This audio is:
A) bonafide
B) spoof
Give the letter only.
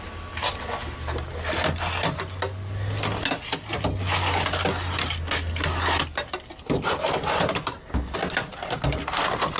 A